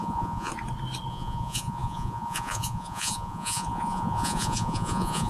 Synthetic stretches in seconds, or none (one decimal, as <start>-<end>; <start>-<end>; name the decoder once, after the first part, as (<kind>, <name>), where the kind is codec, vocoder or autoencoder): 0.0-0.5 (vocoder, Vocos); 1.1-5.3